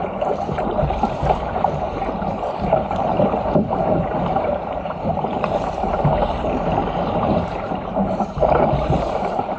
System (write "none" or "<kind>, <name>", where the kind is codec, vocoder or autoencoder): vocoder, BigVGAN v2